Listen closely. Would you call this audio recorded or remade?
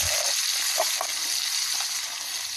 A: recorded